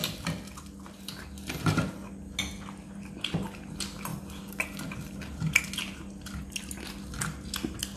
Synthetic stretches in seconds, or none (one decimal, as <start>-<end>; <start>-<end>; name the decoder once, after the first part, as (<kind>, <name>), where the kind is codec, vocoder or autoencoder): none